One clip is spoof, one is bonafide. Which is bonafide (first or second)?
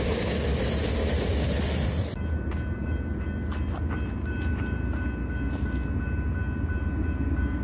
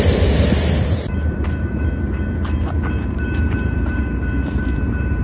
first